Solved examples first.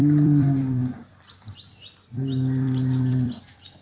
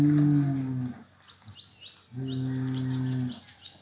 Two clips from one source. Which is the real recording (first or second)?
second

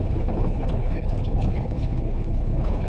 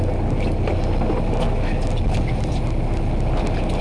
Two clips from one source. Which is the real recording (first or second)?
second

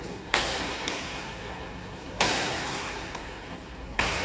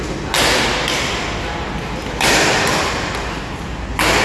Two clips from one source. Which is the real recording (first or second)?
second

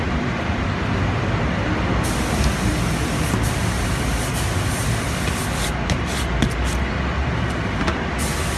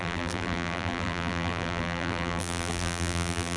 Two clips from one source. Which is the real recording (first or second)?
first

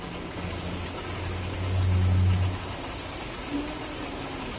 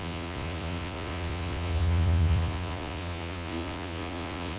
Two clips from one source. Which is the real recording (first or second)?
first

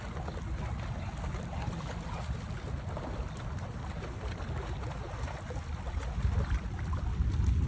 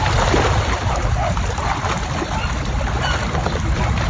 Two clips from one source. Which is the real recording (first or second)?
first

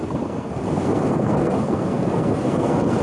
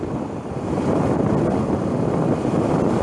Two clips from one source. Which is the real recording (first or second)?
second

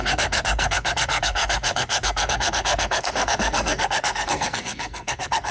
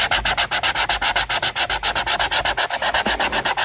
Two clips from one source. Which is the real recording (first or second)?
second